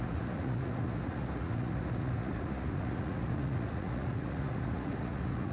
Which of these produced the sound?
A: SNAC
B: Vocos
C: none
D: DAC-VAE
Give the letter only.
B